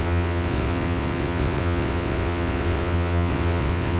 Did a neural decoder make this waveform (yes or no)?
yes